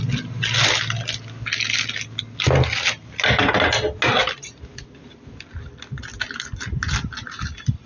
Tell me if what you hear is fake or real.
real